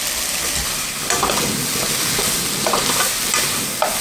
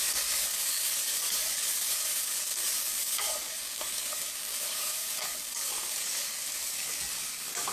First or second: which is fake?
second